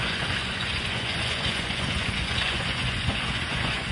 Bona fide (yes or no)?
no